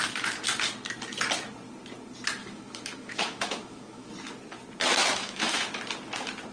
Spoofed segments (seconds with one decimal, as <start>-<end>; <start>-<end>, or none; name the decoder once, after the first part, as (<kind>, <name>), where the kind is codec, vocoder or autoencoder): 2.4-4.1 (autoencoder, DAC-VAE); 5.1-5.8